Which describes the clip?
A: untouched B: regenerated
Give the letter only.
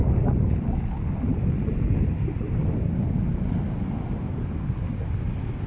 A